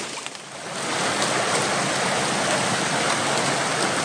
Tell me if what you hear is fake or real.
real